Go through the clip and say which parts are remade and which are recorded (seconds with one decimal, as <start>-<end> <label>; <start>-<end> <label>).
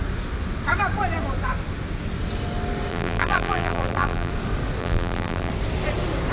0.0-2.9 recorded; 2.9-4.3 remade; 4.3-4.8 recorded; 4.8-5.5 remade; 5.5-6.3 recorded